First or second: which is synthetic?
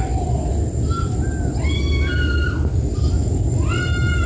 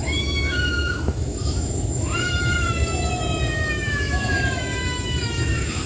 second